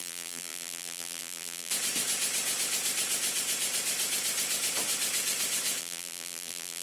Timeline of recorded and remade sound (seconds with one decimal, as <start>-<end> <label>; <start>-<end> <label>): 0.0-1.7 remade; 1.7-5.8 recorded; 5.8-6.8 remade